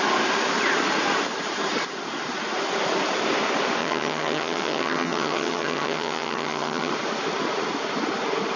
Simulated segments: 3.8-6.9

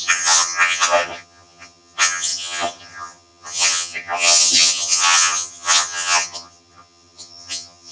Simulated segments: 0.0-7.9

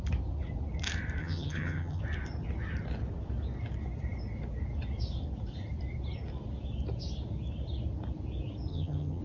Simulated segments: 1.2-2.0; 8.7-9.2